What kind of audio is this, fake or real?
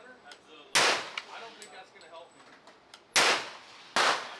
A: real